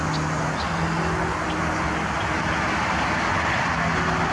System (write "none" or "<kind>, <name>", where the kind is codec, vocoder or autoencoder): none